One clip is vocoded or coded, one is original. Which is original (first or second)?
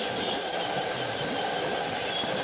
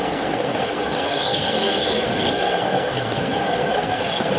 first